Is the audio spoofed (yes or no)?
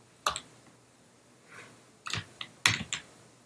no